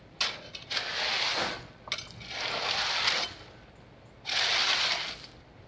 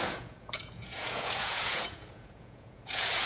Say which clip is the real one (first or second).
first